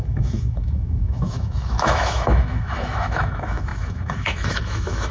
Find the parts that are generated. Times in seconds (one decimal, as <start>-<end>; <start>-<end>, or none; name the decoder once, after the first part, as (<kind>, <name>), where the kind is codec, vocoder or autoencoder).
0.0-5.1 (autoencoder, DAC-VAE)

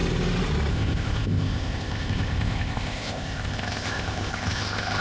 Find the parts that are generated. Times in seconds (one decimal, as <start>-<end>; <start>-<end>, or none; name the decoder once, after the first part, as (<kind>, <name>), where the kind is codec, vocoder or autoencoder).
0.7-5.0 (codec, ZipCodec)